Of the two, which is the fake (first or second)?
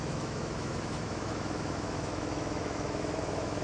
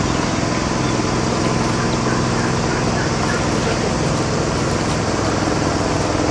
first